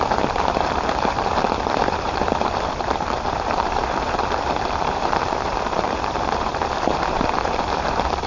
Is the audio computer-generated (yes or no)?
yes